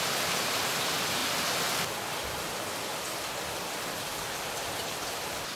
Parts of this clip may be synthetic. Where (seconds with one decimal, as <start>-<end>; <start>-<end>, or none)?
0.0-1.2; 4.6-5.6